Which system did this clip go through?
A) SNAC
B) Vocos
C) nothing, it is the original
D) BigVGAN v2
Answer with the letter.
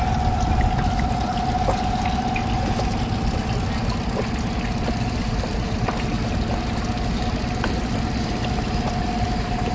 C